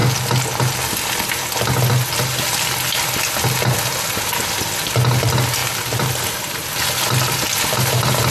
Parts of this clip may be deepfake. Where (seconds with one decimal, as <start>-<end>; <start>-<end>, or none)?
none

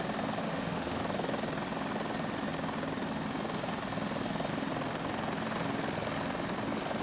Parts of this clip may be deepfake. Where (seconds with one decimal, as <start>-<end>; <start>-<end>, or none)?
0.4-1.0

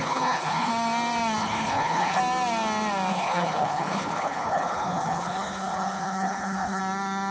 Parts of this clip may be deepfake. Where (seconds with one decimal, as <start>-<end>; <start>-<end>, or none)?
0.0-0.7; 1.4-2.2; 3.1-6.8

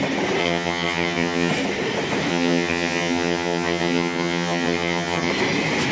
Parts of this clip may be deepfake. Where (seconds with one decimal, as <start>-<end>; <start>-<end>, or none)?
0.4-1.5; 2.3-5.3

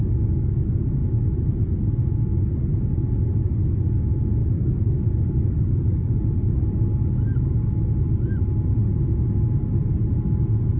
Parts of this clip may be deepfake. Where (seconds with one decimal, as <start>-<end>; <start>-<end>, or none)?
4.4-6.5

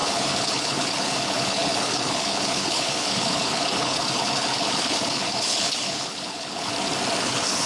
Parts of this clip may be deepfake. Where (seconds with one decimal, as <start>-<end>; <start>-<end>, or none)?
0.0-6.7; 7.2-7.7

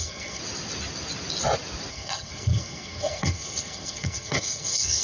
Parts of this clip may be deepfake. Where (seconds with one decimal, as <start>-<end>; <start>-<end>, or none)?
0.0-0.4; 1.9-5.0